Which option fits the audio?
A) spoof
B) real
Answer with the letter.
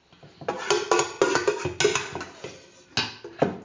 B